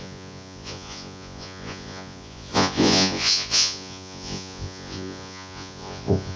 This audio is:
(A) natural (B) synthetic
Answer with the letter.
B